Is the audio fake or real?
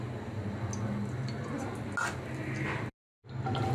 real